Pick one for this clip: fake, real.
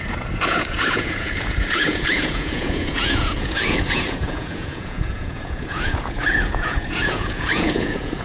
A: fake